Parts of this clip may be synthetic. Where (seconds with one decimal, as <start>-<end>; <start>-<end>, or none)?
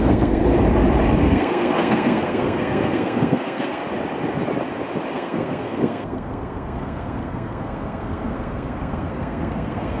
0.0-0.4; 1.2-3.8; 5.1-10.0